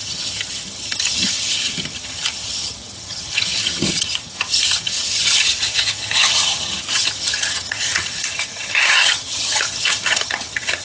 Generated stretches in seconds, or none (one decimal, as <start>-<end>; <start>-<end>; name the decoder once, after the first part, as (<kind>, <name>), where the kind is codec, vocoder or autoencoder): 0.0-10.8 (vocoder, HiFi-GAN)